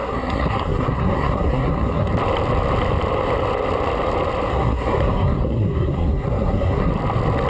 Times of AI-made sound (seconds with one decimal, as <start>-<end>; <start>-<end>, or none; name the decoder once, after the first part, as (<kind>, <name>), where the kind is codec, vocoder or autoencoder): 0.0-2.1 (codec, SNAC); 4.5-6.9

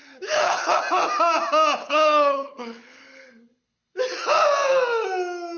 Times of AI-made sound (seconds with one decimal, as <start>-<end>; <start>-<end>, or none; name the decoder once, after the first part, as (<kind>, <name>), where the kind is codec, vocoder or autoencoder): 0.0-0.8 (codec, HILCodec); 1.8-4.0

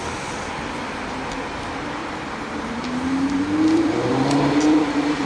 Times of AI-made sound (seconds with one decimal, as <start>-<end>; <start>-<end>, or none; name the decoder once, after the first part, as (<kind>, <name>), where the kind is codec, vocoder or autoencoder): 2.0-5.3 (vocoder, BigVGAN v2)

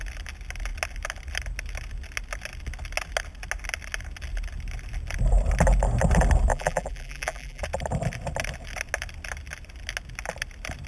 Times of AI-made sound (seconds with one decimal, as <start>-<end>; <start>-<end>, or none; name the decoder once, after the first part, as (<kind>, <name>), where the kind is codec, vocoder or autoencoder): 6.5-7.6 (vocoder, BigVGAN v2)

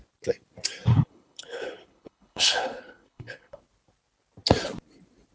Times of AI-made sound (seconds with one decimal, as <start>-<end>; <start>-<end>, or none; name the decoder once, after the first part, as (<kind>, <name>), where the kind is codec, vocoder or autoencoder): 0.9-3.6 (codec, HILCodec)

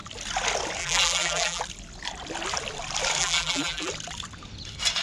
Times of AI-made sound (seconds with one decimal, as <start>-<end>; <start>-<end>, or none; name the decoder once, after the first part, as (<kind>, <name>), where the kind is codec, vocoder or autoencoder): 0.8-1.6 (vocoder, BigVGAN v2); 3.2-3.9

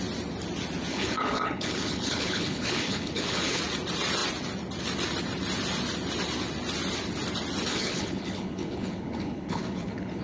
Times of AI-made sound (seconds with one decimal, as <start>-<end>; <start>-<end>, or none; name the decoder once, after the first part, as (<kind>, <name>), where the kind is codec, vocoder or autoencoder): 0.9-3.6 (codec, HILCodec); 7.7-10.2